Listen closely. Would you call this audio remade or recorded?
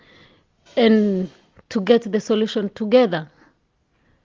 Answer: recorded